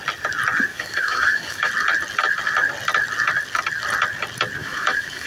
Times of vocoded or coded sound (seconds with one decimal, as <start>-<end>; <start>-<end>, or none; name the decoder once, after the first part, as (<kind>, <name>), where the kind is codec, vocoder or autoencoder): 0.7-1.7 (autoencoder, DAC-VAE); 4.6-5.3